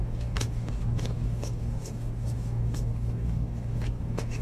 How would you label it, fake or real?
fake